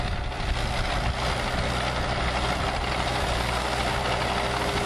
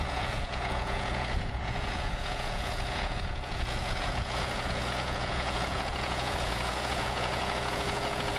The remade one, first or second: second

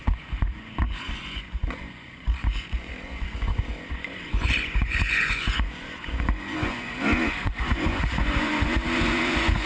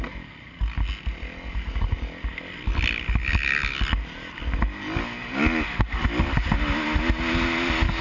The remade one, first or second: first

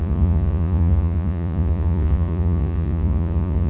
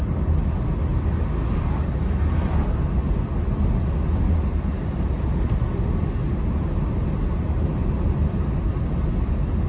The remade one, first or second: first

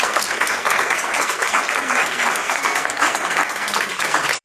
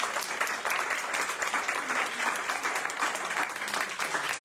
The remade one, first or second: first